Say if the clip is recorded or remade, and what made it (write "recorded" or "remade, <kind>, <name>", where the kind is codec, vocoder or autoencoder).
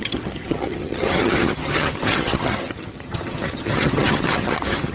remade, vocoder, HiFi-GAN